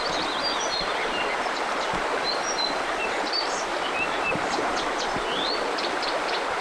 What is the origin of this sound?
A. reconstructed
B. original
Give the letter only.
B